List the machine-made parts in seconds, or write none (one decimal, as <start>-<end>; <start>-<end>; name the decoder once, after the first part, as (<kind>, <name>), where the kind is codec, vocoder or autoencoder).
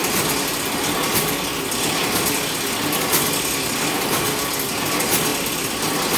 none